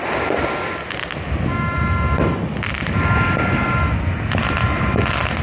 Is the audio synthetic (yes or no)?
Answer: no